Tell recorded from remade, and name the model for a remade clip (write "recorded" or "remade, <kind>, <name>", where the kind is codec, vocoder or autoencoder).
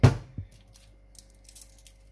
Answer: recorded